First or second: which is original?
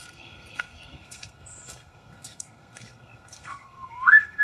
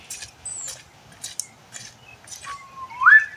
second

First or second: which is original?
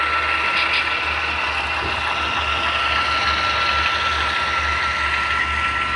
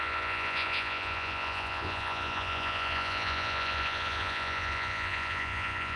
first